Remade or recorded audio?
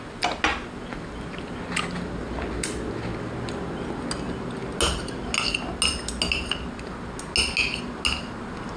recorded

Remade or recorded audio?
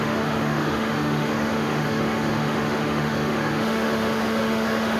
remade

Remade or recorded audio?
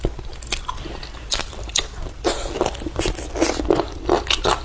recorded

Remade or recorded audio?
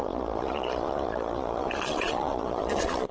remade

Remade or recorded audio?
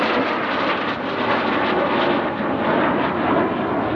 recorded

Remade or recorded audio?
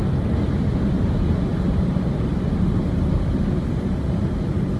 recorded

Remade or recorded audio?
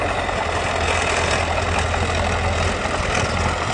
recorded